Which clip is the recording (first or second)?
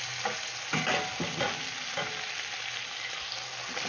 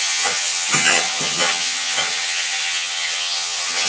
first